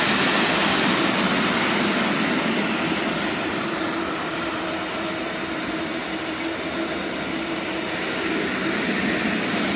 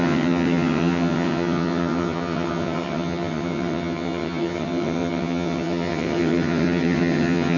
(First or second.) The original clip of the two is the first